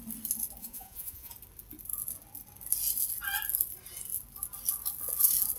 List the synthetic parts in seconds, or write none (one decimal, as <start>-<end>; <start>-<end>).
0.6-1.3